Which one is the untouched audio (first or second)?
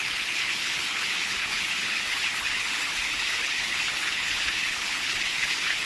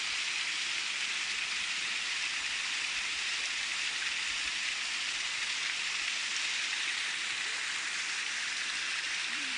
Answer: second